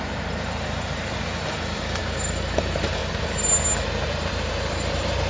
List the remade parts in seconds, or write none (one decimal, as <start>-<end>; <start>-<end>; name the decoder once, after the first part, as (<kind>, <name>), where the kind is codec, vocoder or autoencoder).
0.0-3.0 (vocoder, BigVGAN v2); 4.1-5.3